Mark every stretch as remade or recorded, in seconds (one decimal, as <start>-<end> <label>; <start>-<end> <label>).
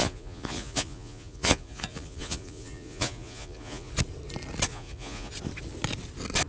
0.0-3.9 remade; 3.9-4.7 recorded; 4.7-5.3 remade; 5.3-6.5 recorded